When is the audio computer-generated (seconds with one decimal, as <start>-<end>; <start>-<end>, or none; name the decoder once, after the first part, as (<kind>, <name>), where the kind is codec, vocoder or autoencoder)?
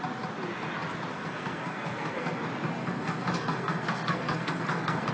1.1-2.4 (codec, SNAC); 2.8-5.1